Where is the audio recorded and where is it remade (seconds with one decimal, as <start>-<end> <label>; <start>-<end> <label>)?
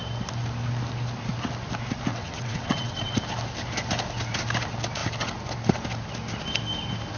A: 0.0-2.1 recorded; 2.1-3.2 remade; 3.2-7.2 recorded